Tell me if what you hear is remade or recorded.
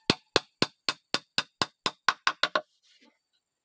recorded